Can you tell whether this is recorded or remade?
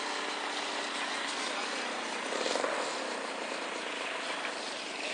recorded